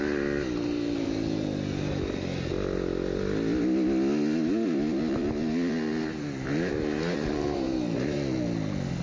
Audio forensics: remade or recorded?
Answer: recorded